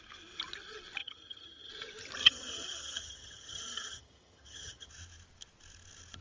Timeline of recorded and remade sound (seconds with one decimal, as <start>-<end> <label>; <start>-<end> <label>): 0.0-1.0 recorded; 1.0-1.7 remade; 1.7-2.2 recorded; 2.2-4.9 remade; 4.9-6.2 recorded